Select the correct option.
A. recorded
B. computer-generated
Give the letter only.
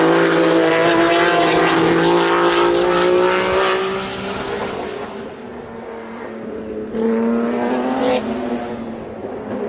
A